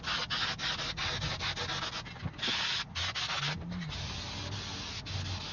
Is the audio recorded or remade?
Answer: recorded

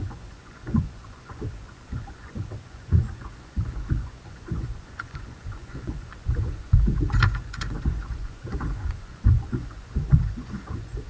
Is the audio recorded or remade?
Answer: remade